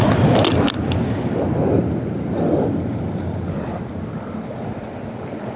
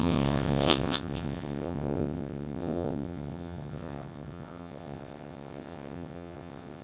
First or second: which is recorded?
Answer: first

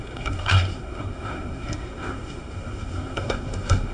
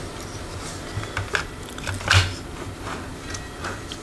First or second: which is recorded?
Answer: second